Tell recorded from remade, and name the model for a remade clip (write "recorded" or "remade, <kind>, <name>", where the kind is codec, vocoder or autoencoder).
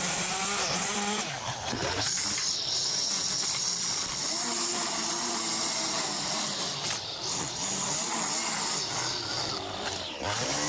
recorded